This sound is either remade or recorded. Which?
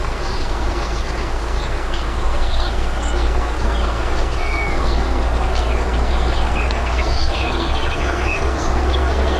remade